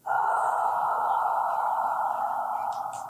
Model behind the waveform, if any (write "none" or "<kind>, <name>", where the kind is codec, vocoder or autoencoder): none